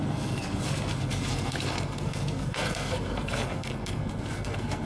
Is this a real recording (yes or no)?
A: no